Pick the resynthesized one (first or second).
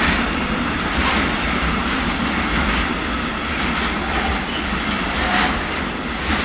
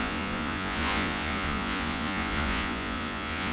second